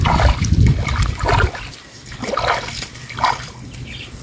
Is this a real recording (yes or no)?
yes